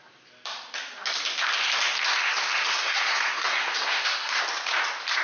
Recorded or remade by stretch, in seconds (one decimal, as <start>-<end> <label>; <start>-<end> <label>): 0.0-2.7 recorded; 2.7-4.4 remade; 4.4-5.2 recorded